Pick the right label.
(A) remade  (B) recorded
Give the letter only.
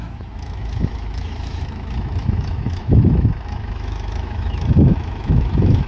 A